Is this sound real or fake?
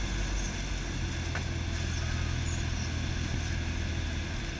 real